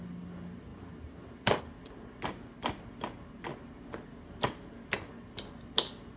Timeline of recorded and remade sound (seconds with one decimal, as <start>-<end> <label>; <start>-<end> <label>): 0.0-6.2 recorded